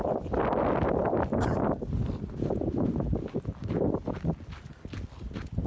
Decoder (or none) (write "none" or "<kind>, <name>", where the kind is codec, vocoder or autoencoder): none